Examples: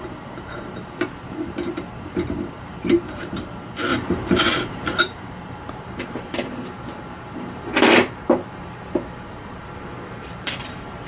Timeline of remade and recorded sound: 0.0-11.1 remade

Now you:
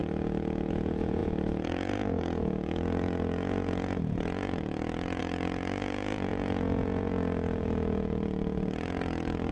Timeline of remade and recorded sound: 0.0-9.5 remade

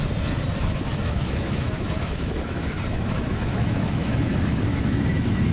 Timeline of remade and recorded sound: 0.0-0.6 recorded; 0.6-5.5 remade